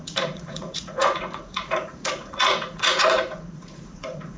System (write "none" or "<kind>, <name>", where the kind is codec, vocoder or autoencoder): vocoder, Vocos